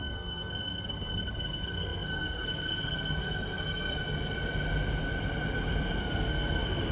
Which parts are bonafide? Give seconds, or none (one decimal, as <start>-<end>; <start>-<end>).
4.0-6.0